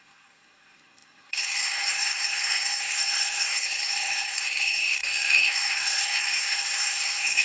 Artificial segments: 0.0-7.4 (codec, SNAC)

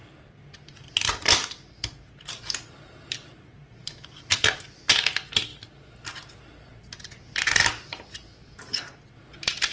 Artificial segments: 5.5-6.1 (vocoder, BigVGAN v2)

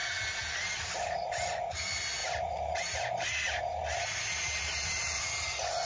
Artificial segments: 2.2-5.2 (vocoder, BigVGAN v2)

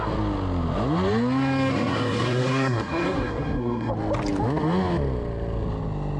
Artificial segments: 1.7-3.9 (codec, SNAC)